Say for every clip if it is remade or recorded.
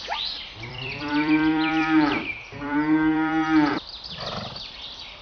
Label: remade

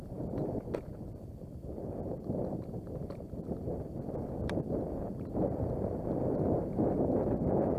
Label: remade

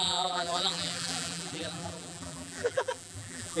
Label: remade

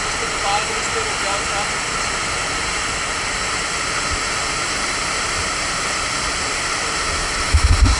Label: recorded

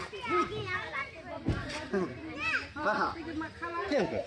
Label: remade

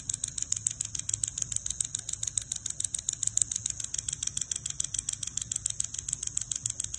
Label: recorded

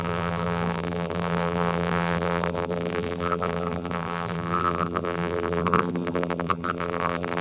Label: remade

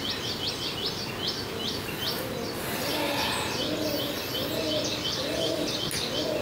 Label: recorded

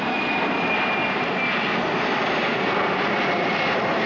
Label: recorded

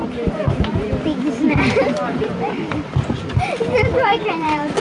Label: remade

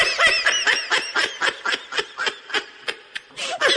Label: recorded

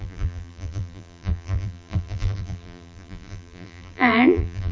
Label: remade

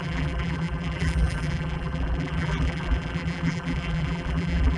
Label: remade